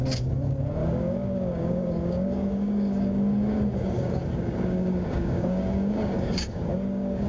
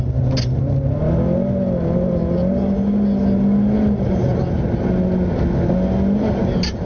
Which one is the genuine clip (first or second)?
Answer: second